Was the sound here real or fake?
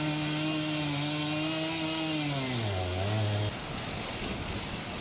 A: real